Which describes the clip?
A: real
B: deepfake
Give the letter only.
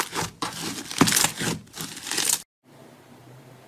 A